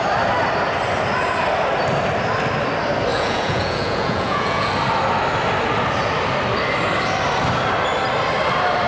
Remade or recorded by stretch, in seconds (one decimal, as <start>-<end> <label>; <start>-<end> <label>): 0.0-3.1 recorded; 3.1-4.7 remade; 4.7-8.9 recorded